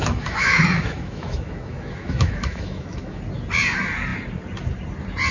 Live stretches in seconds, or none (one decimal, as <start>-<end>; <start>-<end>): 3.2-5.3